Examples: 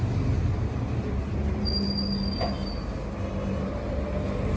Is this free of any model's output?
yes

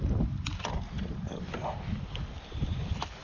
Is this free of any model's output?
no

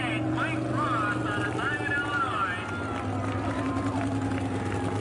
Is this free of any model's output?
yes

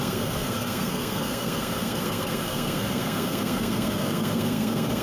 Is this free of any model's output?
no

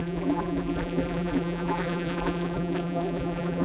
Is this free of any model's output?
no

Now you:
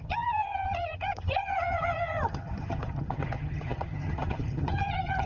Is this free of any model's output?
no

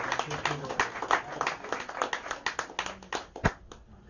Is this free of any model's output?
yes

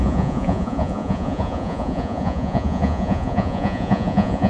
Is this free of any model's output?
no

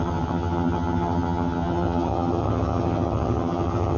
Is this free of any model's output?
no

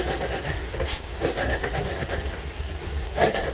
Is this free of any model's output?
no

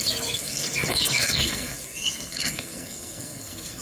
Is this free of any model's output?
no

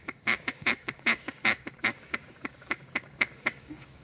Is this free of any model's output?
no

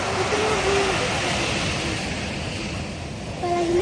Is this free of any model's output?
yes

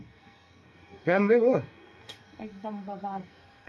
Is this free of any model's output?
no